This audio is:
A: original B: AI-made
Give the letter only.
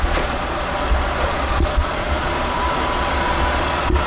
B